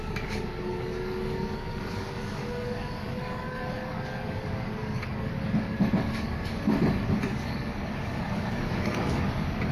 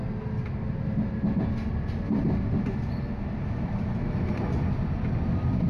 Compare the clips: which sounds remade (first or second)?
first